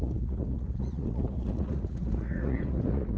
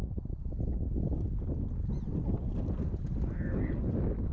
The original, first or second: second